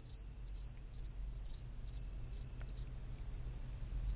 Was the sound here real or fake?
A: real